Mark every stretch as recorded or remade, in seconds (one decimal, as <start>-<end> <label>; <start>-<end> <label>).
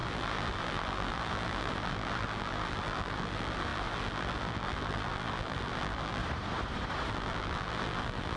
0.0-6.2 remade; 6.2-7.1 recorded; 7.1-8.4 remade